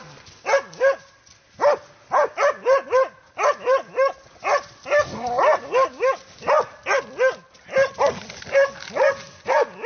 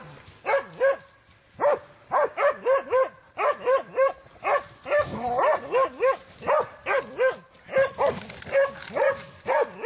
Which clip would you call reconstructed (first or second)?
second